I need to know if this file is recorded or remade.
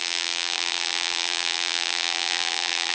remade